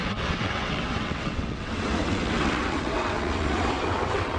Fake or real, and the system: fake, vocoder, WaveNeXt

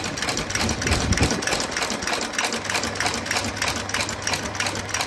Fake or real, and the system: real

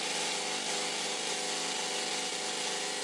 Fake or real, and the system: real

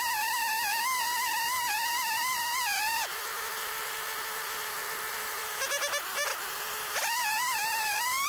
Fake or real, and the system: fake, vocoder, BigVGAN v2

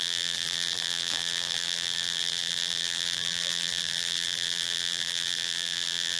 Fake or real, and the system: fake, vocoder, BigVGAN v2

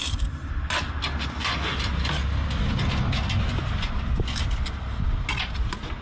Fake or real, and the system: real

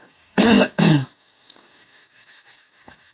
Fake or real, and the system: fake, codec, DAC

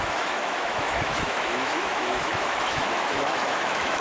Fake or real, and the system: fake, autoencoder, DAC-VAE